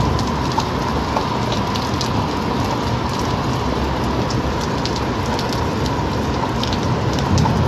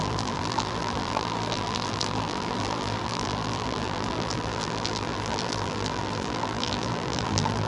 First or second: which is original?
first